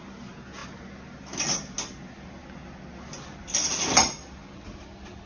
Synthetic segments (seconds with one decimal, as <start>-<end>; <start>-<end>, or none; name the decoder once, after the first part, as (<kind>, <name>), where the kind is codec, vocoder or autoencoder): none